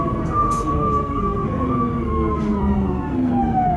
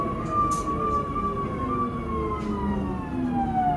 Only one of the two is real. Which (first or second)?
second